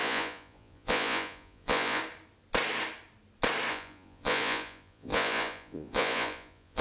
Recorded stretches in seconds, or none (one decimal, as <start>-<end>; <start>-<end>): 2.0-3.7